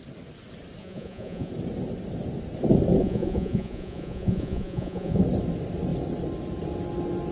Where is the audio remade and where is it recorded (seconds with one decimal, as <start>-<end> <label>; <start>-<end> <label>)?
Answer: 0.0-0.8 recorded; 0.8-1.5 remade; 1.5-3.0 recorded; 3.0-5.2 remade; 5.2-7.3 recorded